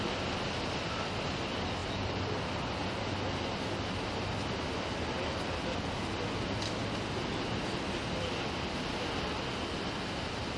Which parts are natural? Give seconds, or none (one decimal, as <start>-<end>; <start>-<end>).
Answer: 0.0-10.6